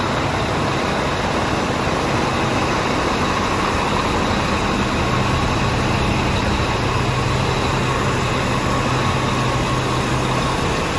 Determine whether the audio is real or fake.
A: real